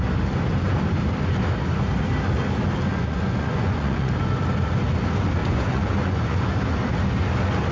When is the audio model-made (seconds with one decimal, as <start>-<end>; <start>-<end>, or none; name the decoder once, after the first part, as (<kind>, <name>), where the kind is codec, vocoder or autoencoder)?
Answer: 2.9-4.1 (vocoder, Vocos); 5.4-6.5